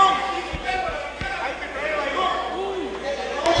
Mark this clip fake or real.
real